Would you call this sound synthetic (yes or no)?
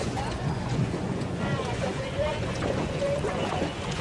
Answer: yes